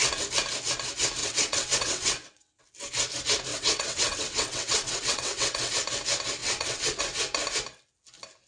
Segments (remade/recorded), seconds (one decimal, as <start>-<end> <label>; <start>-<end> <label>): 0.0-1.2 recorded; 1.2-2.6 remade; 2.6-3.5 recorded; 3.5-5.7 remade; 5.7-6.4 recorded; 6.4-7.0 remade; 7.0-8.5 recorded